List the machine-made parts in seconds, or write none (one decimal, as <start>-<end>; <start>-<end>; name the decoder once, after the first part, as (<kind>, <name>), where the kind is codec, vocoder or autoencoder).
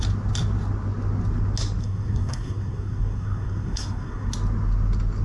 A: 1.8-4.3 (codec, SNAC)